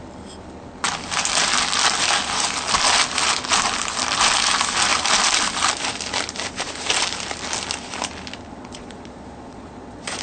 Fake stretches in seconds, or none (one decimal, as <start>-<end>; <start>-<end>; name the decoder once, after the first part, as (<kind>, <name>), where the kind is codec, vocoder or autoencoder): 8.5-10.2 (vocoder, Vocos)